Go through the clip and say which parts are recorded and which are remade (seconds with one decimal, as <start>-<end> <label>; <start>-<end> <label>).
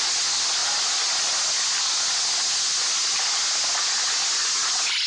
0.0-5.1 recorded